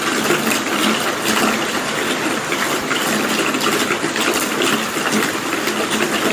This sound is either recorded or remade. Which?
recorded